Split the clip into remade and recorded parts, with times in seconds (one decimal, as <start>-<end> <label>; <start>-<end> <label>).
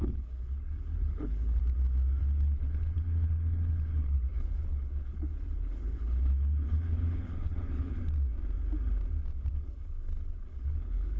0.0-1.6 remade; 1.6-2.2 recorded; 2.2-8.0 remade; 8.0-9.5 recorded; 9.5-11.2 remade